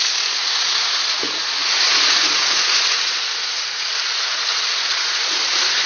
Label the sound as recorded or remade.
remade